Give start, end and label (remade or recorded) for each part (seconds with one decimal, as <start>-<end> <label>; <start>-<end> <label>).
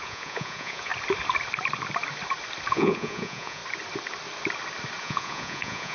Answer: 0.0-0.9 remade; 0.9-2.7 recorded; 2.7-3.6 remade; 3.6-5.0 recorded; 5.0-5.9 remade